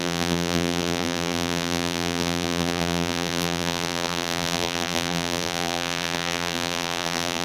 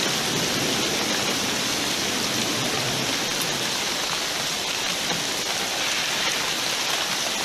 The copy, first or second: first